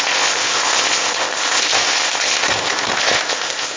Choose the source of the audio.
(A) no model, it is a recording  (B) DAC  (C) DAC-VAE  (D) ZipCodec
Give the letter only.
D